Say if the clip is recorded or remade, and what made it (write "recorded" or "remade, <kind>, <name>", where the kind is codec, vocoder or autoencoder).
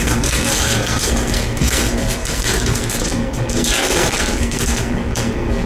remade, codec, SNAC